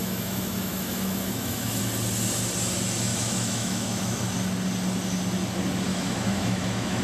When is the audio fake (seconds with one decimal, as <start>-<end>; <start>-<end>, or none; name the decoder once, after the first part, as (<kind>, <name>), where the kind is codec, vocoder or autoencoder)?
0.0-1.8 (autoencoder, DAC-VAE); 3.1-4.3; 5.9-7.0